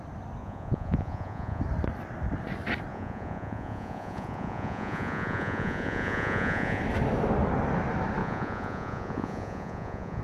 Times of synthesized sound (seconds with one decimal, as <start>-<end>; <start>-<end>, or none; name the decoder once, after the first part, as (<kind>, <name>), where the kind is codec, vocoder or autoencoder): 0.4-1.6 (vocoder, Vocos); 2.9-6.8; 8.2-10.2